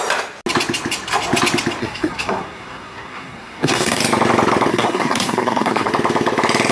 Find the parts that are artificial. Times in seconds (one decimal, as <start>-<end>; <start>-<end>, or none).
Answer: 1.8-4.0; 4.7-5.9